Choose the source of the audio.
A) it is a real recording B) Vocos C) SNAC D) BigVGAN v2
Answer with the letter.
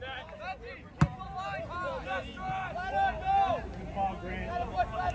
A